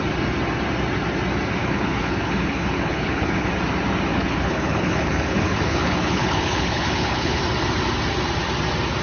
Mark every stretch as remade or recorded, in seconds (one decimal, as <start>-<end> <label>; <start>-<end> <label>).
0.0-1.6 recorded; 1.6-3.5 remade; 3.5-4.1 recorded; 4.1-7.4 remade; 7.4-9.0 recorded